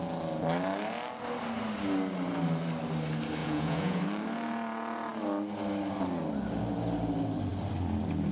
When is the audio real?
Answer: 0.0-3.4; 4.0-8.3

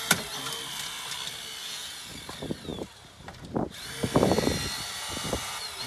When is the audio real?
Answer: 0.0-1.6; 2.2-5.9

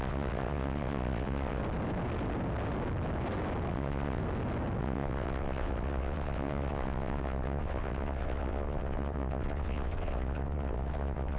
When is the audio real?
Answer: 1.6-3.7; 4.2-4.8